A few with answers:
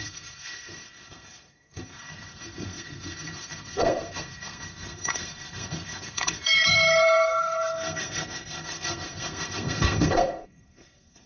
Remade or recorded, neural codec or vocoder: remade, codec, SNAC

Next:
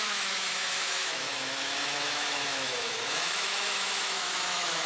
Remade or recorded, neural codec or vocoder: remade, autoencoder, DAC-VAE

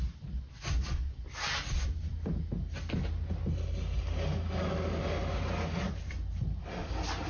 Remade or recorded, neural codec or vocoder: recorded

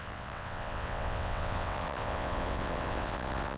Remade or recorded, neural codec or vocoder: remade, vocoder, WaveNeXt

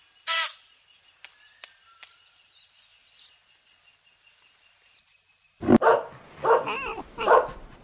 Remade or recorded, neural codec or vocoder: recorded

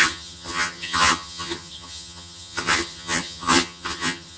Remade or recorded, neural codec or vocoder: remade, vocoder, HiFi-GAN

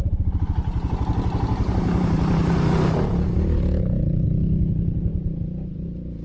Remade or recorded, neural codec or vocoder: recorded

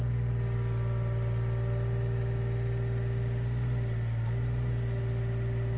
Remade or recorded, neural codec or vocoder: recorded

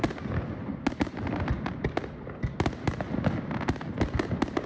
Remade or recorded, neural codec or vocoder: recorded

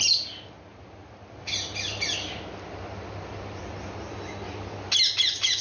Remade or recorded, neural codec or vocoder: recorded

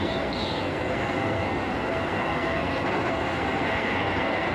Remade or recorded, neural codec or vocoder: remade, codec, SNAC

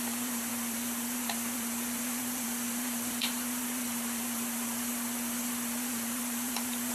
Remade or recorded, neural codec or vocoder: remade, vocoder, BigVGAN v2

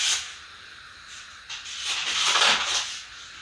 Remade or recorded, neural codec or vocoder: recorded